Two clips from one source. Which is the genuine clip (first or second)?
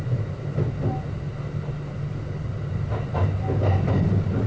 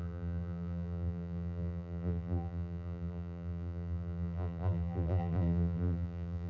first